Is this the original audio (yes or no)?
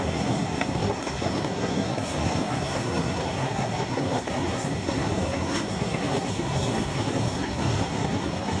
no